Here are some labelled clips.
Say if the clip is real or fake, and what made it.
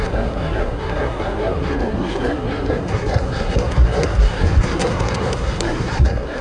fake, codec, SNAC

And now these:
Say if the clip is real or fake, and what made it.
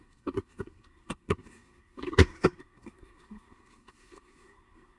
fake, codec, SNAC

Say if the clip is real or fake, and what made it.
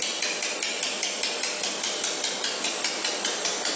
real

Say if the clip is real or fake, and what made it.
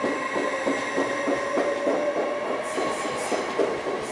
real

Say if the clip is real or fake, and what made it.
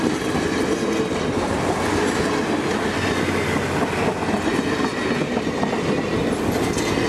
real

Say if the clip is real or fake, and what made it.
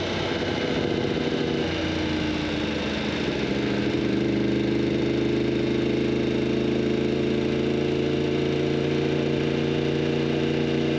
real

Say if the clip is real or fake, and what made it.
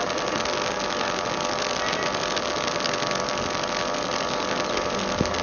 real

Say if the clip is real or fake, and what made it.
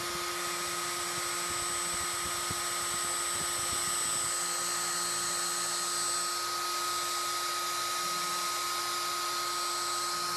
real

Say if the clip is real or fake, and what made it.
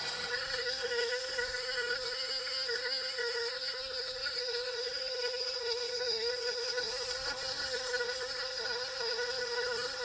fake, codec, SNAC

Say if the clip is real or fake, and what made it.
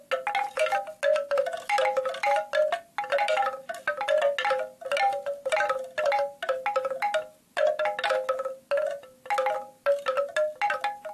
real